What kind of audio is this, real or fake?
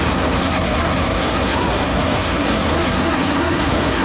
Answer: fake